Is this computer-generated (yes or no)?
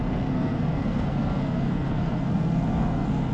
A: yes